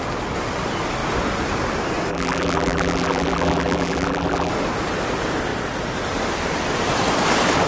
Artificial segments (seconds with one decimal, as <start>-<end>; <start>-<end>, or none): 2.1-4.5